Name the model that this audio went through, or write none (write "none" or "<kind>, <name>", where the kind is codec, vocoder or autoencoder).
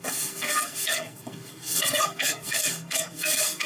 codec, SNAC